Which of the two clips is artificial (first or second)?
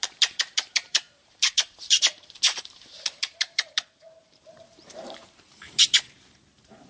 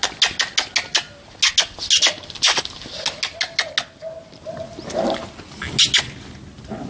first